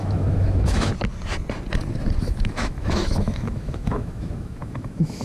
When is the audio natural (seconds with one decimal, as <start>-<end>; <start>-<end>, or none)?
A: 0.9-2.2